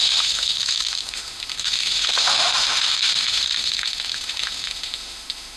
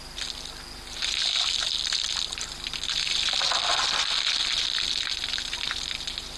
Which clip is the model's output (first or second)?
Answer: first